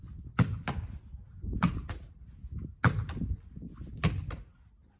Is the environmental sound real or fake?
real